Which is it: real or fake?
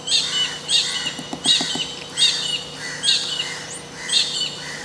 real